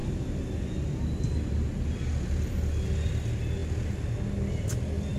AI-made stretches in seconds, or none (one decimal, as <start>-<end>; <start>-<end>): none